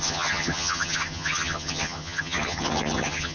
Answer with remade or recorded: remade